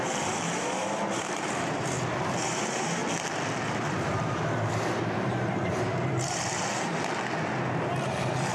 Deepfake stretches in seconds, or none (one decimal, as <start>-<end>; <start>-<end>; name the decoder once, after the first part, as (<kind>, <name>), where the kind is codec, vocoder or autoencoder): 0.0-3.0 (vocoder, BigVGAN v2); 3.7-6.9; 7.7-8.5

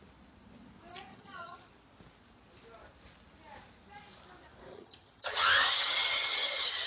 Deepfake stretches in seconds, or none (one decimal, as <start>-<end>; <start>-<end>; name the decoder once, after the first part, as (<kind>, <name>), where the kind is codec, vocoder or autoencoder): 1.1-1.7 (vocoder, HiFi-GAN); 4.7-6.9

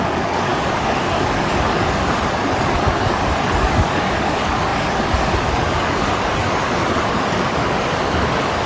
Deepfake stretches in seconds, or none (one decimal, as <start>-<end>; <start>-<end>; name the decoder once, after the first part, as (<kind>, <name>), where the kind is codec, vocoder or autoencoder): 0.0-8.7 (codec, DAC)

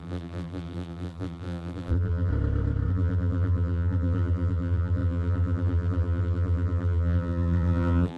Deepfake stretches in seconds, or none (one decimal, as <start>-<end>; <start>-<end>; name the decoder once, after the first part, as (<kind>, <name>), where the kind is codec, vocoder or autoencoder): 0.0-2.3 (vocoder, BigVGAN v2); 2.9-8.2

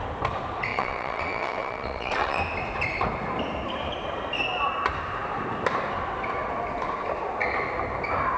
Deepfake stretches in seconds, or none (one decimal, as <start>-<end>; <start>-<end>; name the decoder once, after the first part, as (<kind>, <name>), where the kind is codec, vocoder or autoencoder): 0.7-2.4 (vocoder, WaveNeXt)